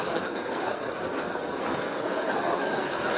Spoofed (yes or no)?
yes